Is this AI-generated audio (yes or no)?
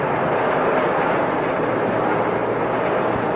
no